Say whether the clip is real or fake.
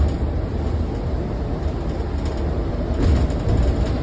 real